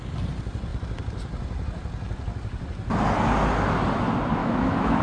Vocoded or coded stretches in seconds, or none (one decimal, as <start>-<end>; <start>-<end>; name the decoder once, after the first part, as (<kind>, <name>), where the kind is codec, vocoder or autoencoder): 4.4-5.0 (autoencoder, DAC-VAE)